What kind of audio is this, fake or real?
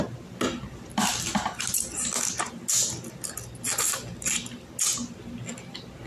real